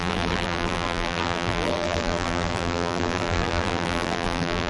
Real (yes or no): no